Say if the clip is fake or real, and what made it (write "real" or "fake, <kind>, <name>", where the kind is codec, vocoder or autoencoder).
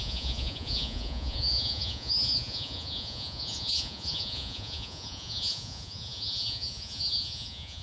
fake, vocoder, Vocos